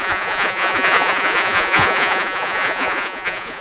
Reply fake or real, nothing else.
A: fake